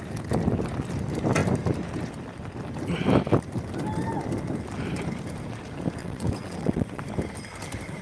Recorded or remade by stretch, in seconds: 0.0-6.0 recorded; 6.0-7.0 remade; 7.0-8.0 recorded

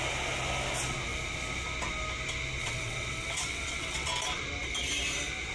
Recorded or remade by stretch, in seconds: 0.0-2.6 recorded; 2.6-4.1 remade; 4.1-5.5 recorded